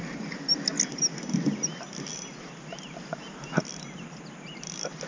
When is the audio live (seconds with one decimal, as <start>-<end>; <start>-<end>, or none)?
0.0-5.1